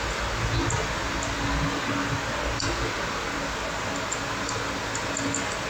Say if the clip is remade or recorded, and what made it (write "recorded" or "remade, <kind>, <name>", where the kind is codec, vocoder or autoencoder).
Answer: recorded